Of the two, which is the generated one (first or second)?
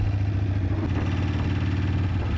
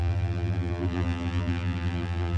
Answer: second